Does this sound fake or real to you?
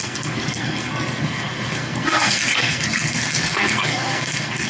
fake